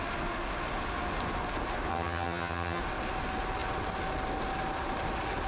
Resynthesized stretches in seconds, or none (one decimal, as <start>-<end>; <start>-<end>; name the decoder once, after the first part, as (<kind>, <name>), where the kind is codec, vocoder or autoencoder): 1.9-2.8 (vocoder, HiFi-GAN)